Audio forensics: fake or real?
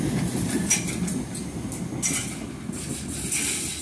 real